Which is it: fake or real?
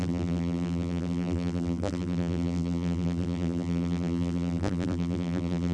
fake